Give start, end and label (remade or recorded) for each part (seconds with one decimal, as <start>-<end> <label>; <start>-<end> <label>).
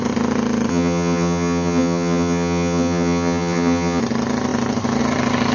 0.0-0.7 recorded; 0.7-4.0 remade; 4.0-5.5 recorded